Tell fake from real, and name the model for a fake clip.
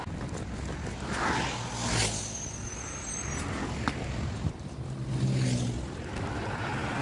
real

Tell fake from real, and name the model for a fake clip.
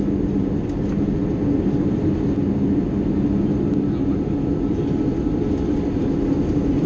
real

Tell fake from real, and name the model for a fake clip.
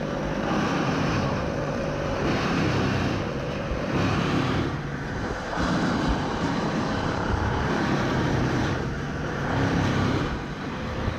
fake, vocoder, BigVGAN v2